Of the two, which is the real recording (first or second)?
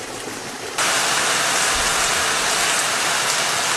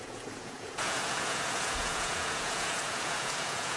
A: first